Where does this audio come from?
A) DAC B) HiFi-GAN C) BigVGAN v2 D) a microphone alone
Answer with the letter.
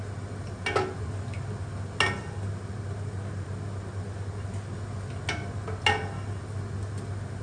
D